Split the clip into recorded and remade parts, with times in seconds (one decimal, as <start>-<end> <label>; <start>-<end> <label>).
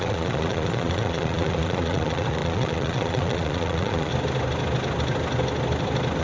0.0-4.1 remade; 4.1-6.2 recorded